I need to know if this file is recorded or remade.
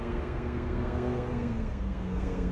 remade